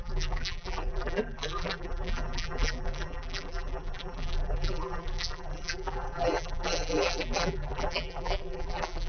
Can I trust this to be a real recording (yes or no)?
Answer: no